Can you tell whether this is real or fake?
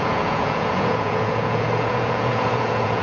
fake